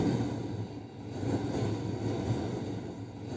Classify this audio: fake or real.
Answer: real